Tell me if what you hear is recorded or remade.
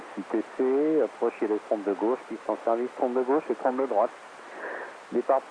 recorded